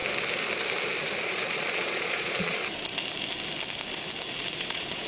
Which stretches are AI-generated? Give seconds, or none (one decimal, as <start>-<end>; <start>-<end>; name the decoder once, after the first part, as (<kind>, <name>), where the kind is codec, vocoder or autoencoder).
1.2-2.6 (vocoder, Vocos); 4.5-5.1